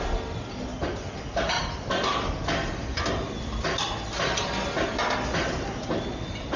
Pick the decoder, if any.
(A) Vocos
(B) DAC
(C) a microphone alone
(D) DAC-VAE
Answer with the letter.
C